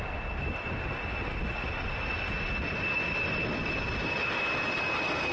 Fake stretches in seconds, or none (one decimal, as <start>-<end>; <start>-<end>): none